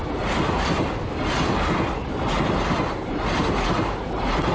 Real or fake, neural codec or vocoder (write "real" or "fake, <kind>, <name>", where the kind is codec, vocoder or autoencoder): real